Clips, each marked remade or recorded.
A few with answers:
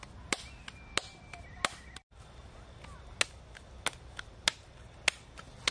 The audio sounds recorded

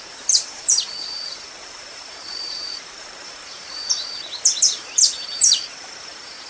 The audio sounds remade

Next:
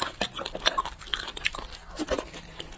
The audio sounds recorded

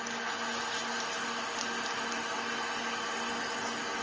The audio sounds recorded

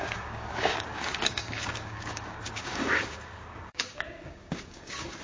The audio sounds remade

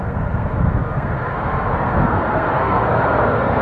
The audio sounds remade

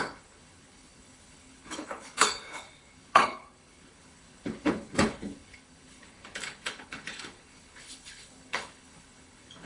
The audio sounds remade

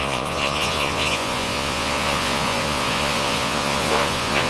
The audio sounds remade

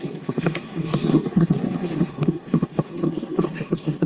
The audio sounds remade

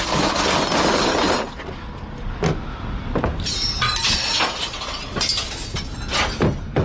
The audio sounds recorded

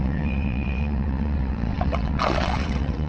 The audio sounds remade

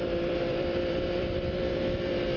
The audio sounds remade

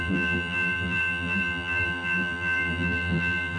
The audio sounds remade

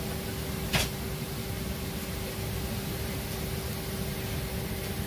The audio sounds recorded